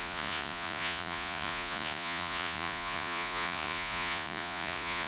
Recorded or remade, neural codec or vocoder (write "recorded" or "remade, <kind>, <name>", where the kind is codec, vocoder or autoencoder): remade, vocoder, Vocos